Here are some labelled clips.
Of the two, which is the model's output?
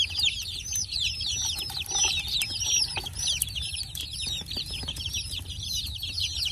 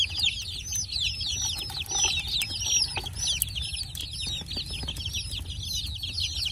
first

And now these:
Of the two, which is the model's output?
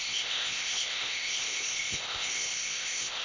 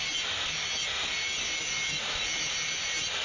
first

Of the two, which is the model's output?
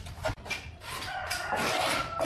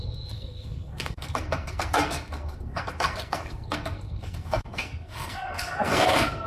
second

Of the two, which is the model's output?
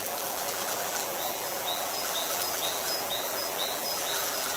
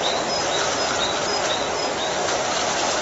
first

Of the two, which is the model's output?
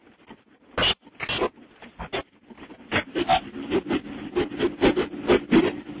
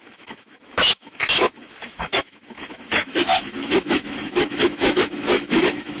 second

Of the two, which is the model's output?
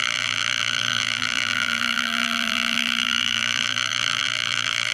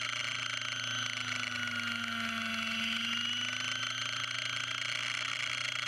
first